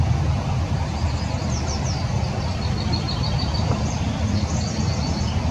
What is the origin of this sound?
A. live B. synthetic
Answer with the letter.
A